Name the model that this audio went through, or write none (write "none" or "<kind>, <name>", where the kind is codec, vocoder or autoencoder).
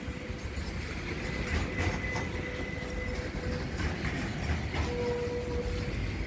none